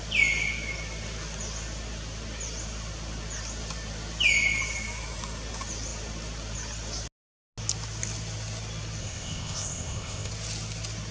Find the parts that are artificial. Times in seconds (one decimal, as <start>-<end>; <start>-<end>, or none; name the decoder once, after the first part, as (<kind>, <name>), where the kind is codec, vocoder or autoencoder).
9.0-10.3 (codec, ZipCodec)